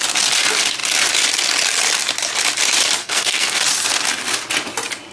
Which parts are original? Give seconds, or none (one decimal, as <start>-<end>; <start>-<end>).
0.0-3.0; 3.6-5.1